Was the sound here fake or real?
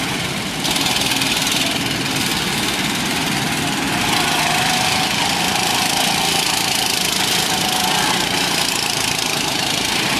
real